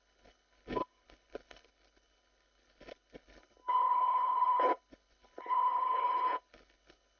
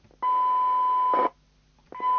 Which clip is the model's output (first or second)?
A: first